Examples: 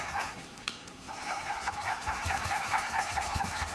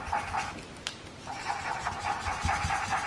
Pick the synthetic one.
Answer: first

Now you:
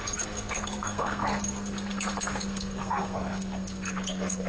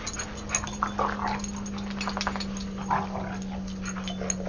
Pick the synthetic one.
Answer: first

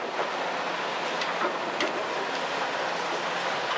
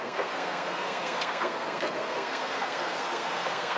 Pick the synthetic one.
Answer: second